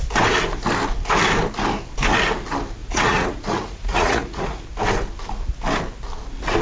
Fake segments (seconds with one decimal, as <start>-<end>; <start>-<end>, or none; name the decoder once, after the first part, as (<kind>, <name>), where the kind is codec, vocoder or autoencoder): 2.8-4.6 (vocoder, Vocos)